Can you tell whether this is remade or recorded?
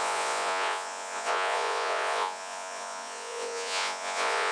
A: remade